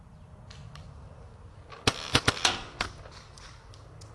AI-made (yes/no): no